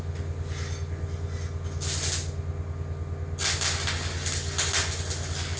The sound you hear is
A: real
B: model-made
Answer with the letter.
A